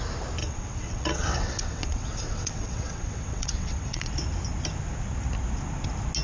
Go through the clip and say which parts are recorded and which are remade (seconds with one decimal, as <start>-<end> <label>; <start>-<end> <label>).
0.0-0.4 recorded; 0.4-4.1 remade; 4.1-6.2 recorded